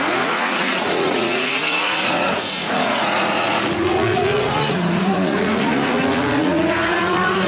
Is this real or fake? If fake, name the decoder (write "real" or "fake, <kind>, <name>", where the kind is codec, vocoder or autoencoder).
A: fake, vocoder, Vocos